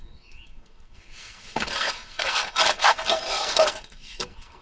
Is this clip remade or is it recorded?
remade